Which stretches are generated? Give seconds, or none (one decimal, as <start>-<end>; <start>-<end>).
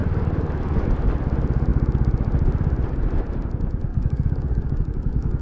0.0-1.1; 3.9-5.4